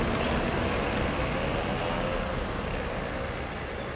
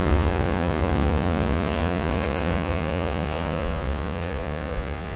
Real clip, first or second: first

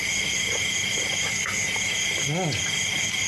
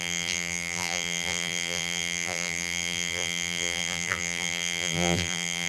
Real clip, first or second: first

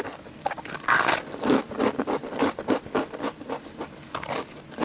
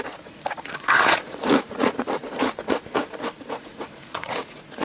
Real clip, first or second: first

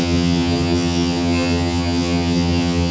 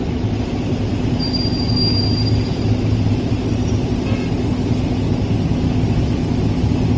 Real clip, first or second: second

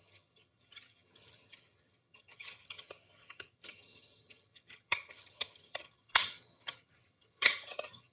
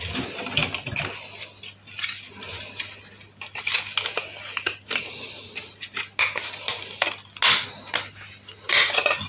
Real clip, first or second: second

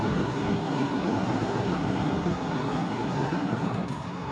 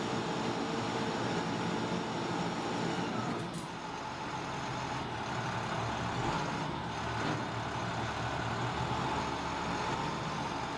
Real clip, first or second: second